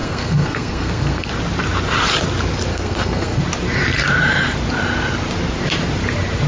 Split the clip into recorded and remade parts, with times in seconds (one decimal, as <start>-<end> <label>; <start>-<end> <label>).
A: 0.0-1.3 remade; 1.3-2.7 recorded; 2.7-3.4 remade; 3.4-6.5 recorded